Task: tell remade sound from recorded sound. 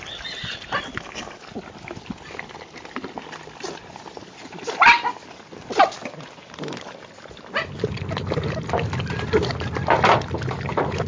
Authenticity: recorded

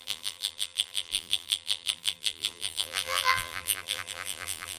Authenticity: remade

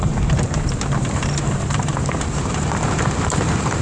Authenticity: remade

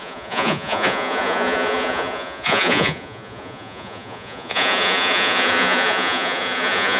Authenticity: remade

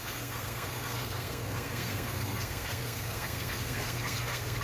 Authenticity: remade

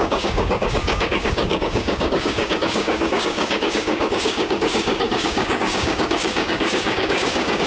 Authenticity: remade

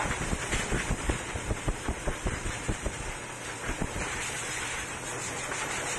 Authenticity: remade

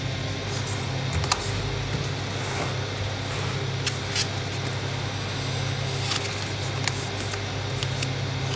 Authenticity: recorded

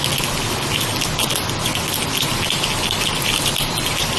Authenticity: recorded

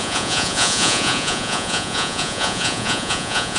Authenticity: remade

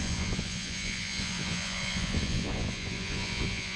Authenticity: remade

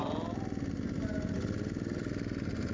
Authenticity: recorded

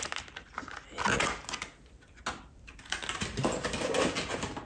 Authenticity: recorded